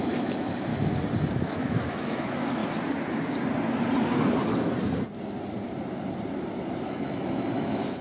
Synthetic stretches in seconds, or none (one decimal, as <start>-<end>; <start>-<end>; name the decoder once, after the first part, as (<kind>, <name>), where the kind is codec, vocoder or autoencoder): 0.0-0.7 (autoencoder, DAC-VAE); 1.3-2.6; 6.8-8.0